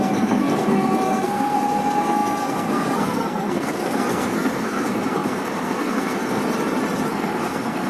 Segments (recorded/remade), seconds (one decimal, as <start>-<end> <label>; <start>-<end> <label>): 0.0-6.4 remade; 6.4-7.1 recorded; 7.1-7.9 remade